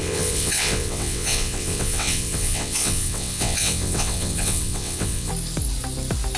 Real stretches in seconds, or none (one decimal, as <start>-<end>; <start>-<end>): 5.3-6.4